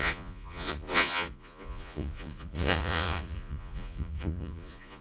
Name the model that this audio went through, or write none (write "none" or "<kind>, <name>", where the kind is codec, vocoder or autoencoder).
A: vocoder, Vocos